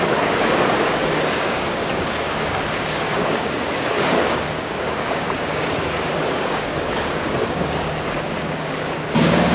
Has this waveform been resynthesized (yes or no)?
yes